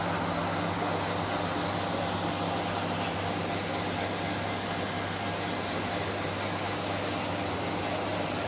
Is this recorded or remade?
recorded